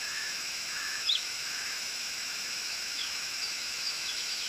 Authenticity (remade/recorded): remade